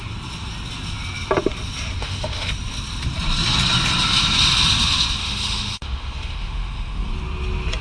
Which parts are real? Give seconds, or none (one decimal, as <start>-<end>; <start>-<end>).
0.0-2.0; 2.5-5.2; 7.1-7.8